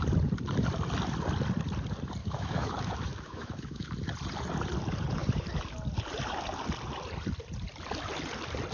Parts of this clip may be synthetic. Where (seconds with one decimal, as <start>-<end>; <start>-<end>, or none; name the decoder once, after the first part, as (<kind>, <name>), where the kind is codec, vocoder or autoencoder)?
2.2-3.9 (autoencoder, DAC-VAE)